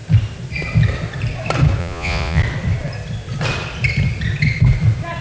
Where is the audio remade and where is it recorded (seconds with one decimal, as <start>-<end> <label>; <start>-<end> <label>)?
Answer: 0.0-1.8 recorded; 1.8-2.4 remade; 2.4-5.2 recorded